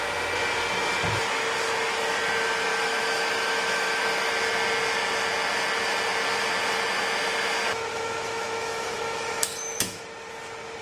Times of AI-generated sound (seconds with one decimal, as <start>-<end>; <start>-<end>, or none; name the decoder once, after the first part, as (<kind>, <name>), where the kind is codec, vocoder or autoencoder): 2.7-4.3 (autoencoder, DAC-VAE); 7.9-10.0